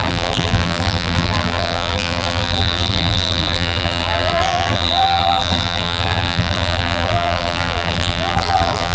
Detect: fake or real fake